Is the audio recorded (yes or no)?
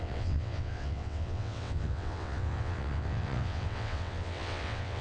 no